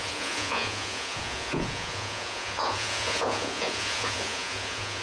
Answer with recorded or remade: remade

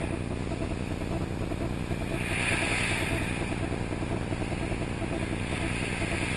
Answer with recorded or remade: recorded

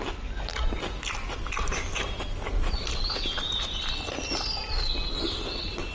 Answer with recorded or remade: recorded